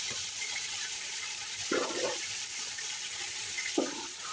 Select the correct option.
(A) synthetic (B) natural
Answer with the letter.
A